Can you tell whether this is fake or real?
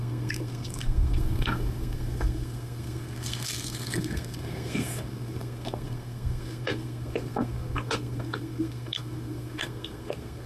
fake